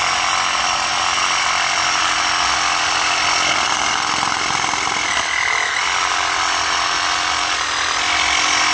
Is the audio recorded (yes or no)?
yes